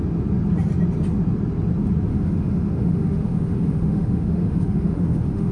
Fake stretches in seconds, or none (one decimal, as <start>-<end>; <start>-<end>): 2.1-5.5